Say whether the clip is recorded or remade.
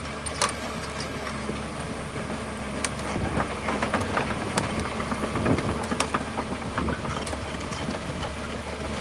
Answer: recorded